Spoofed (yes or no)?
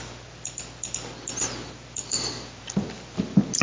no